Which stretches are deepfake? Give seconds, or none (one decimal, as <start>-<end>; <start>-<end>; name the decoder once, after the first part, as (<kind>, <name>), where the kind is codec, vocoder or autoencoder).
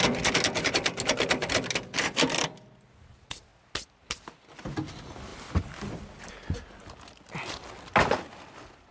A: none